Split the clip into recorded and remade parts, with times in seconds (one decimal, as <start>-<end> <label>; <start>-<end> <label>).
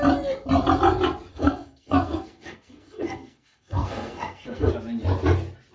0.0-1.3 recorded; 1.3-4.7 remade; 4.7-5.7 recorded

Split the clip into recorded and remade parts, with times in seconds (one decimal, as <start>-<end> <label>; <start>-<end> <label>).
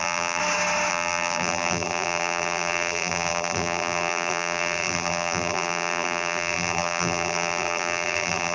0.0-0.4 remade; 0.4-0.9 recorded; 0.9-8.5 remade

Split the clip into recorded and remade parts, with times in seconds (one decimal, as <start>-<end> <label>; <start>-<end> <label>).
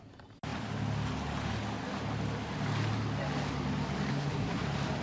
0.0-4.1 recorded; 4.1-4.6 remade; 4.6-5.0 recorded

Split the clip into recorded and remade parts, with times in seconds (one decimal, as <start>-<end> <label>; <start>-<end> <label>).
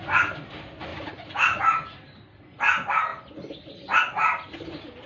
0.0-0.9 recorded; 0.9-1.6 remade; 1.6-5.1 recorded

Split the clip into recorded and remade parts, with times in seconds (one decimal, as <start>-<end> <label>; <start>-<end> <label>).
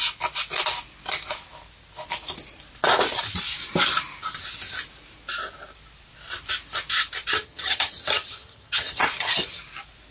0.0-7.3 recorded; 7.3-9.6 remade; 9.6-10.1 recorded